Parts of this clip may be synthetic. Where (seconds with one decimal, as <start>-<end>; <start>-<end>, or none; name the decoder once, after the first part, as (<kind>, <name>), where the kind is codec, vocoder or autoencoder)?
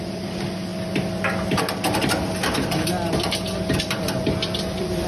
0.0-0.7 (vocoder, BigVGAN v2); 3.8-5.1